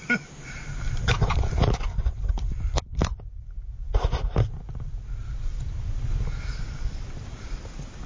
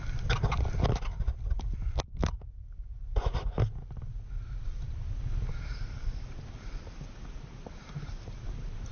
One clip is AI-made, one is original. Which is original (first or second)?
second